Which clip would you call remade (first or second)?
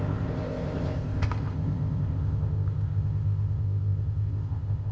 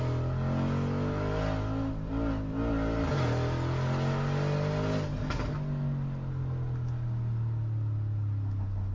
first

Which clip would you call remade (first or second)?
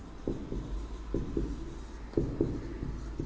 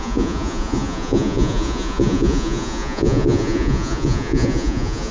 second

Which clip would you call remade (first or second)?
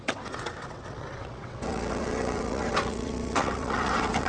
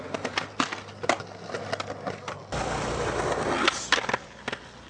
first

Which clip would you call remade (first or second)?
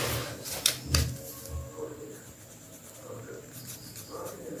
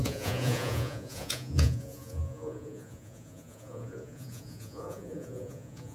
second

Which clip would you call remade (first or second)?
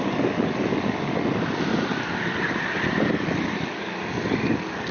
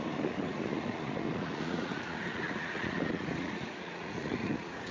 second